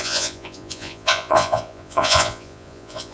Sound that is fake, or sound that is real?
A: fake